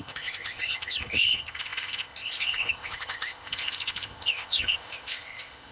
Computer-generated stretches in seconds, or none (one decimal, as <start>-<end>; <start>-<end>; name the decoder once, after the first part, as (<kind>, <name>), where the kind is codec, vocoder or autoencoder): 0.0-5.7 (codec, ZipCodec)